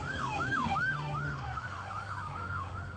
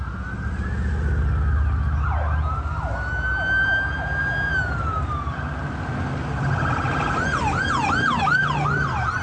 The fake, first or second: first